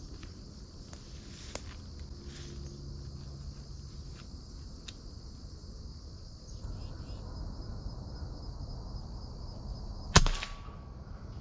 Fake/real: real